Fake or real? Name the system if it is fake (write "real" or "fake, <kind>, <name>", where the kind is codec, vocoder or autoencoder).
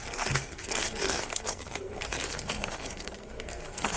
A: fake, codec, SNAC